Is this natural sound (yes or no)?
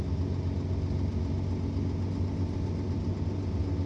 yes